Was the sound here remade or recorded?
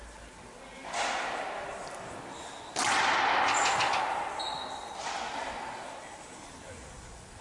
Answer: recorded